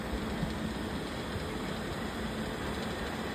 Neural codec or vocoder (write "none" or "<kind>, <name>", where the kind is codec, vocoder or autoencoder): none